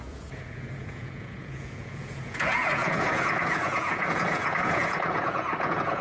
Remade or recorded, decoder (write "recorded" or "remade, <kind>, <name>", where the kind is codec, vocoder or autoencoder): remade, vocoder, Vocos